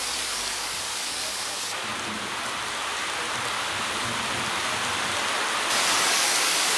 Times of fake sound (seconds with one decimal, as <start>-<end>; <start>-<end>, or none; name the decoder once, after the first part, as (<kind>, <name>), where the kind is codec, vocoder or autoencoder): 0.0-1.9 (codec, DAC); 6.0-6.8